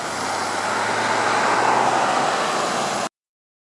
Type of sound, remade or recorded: recorded